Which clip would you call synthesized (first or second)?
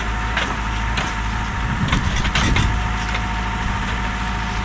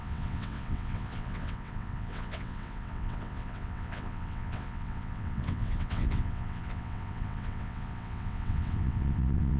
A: second